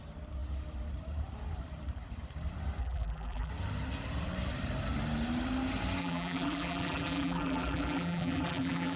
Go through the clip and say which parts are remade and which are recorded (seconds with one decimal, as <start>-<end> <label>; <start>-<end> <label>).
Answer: 0.0-2.8 recorded; 2.8-3.5 remade; 3.5-6.0 recorded; 6.0-9.0 remade